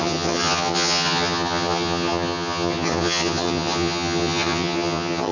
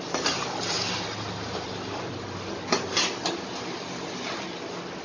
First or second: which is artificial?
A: first